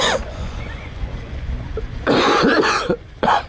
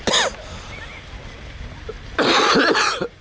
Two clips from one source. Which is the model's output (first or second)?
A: first